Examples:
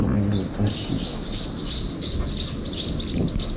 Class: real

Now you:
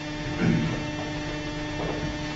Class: real